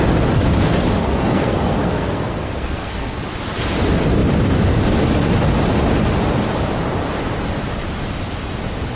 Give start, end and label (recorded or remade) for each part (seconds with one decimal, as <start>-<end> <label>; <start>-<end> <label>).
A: 0.0-1.0 recorded; 1.0-3.2 remade; 3.2-9.0 recorded